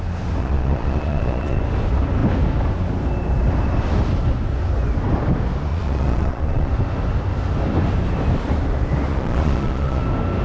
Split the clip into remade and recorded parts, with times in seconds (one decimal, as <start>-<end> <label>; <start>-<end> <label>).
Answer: 0.0-0.4 recorded; 0.4-1.6 remade; 1.6-5.7 recorded; 5.7-6.7 remade; 6.7-9.1 recorded; 9.1-10.0 remade; 10.0-10.4 recorded